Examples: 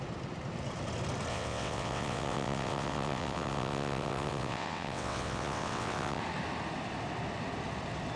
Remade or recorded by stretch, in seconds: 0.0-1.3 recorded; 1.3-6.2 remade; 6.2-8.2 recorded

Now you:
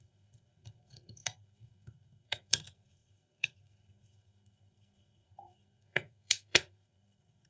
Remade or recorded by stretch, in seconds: 0.0-7.5 remade